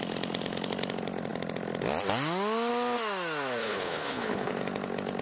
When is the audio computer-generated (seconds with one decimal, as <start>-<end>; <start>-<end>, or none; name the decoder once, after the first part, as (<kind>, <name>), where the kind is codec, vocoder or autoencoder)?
3.6-4.5 (codec, HILCodec)

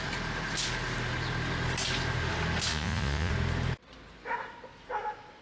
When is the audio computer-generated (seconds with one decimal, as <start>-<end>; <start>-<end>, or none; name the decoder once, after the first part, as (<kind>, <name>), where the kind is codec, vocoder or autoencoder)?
2.7-3.3 (vocoder, Vocos)

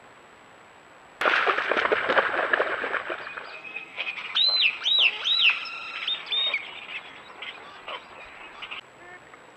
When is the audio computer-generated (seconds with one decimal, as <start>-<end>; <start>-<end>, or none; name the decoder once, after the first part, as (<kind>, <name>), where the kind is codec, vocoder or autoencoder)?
3.5-4.1 (codec, SNAC)

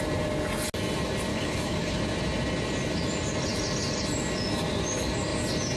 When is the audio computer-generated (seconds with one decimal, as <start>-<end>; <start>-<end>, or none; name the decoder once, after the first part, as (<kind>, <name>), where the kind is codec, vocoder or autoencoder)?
1.3-2.0 (codec, HILCodec)

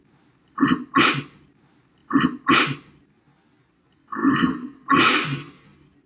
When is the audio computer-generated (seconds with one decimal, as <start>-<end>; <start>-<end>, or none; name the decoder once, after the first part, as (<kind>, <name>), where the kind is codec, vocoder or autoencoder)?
none

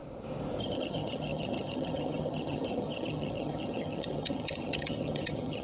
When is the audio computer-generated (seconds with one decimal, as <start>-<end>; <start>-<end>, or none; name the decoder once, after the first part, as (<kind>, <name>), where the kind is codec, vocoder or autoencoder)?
0.6-5.6 (vocoder, HiFi-GAN)

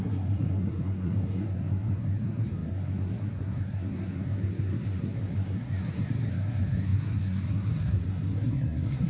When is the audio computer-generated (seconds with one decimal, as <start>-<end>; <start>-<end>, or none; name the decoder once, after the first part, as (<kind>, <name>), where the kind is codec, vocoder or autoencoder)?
0.0-9.1 (codec, SNAC)

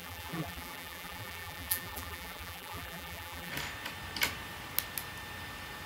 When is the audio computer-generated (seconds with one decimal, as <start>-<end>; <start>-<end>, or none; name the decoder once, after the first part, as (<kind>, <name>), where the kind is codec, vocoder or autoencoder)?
0.0-3.5 (vocoder, BigVGAN v2)